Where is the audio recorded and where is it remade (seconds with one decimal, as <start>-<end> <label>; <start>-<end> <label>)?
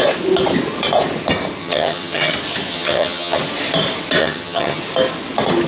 0.0-1.6 recorded; 1.6-2.3 remade; 2.3-2.7 recorded; 2.7-3.4 remade; 3.4-4.2 recorded; 4.2-4.8 remade; 4.8-5.7 recorded